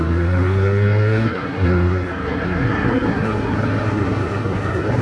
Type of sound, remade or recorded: remade